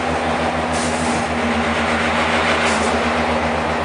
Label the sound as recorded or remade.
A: recorded